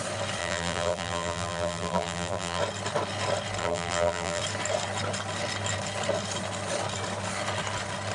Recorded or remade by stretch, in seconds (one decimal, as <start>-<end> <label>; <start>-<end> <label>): 0.0-0.4 recorded; 0.4-2.6 remade; 2.6-3.6 recorded; 3.6-4.4 remade; 4.4-8.1 recorded